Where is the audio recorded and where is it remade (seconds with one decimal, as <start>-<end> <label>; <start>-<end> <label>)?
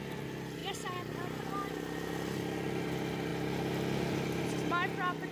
0.0-0.6 recorded; 0.6-1.1 remade; 1.1-5.3 recorded